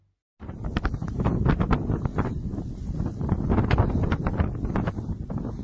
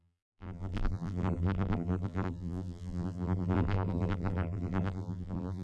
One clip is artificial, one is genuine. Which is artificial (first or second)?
second